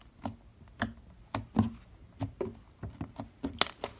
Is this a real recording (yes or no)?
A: yes